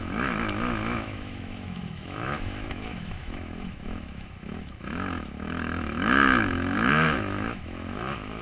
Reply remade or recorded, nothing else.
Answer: remade